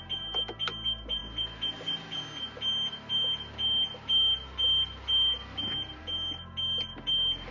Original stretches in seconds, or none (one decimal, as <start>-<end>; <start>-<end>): 0.0-7.5